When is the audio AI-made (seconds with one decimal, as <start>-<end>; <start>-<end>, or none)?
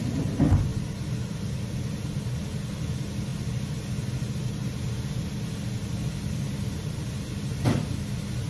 none